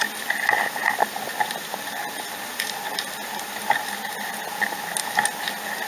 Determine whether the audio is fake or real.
real